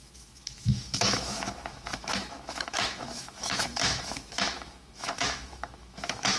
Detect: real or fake fake